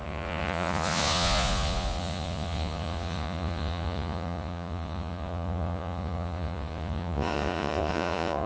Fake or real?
fake